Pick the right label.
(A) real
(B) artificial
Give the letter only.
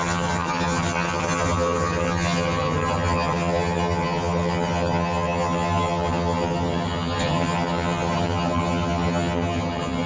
B